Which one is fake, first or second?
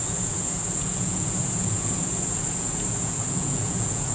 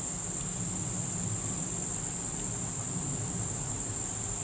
first